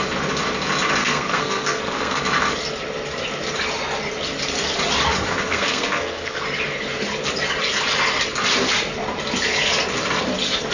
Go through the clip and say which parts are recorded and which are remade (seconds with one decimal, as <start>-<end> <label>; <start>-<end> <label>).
0.0-1.0 recorded; 1.0-2.2 remade; 2.2-5.5 recorded; 5.5-6.4 remade; 6.4-10.7 recorded